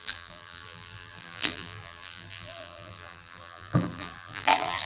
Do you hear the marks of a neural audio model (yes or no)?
yes